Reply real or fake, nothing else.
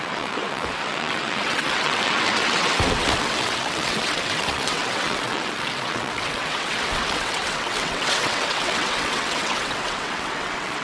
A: fake